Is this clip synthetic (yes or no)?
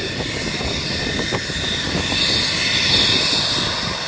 no